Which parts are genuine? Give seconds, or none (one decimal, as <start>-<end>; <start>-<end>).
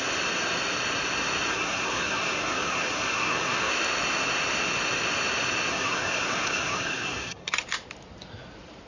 0.0-1.5; 3.7-5.7; 7.5-8.9